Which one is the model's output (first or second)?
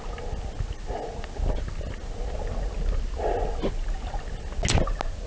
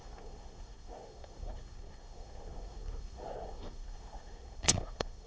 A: second